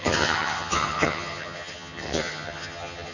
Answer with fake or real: fake